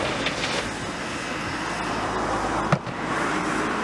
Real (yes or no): yes